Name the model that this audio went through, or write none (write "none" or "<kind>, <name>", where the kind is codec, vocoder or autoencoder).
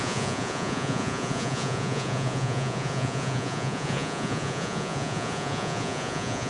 vocoder, Vocos